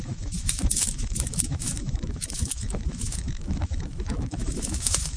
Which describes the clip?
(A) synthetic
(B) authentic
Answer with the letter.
A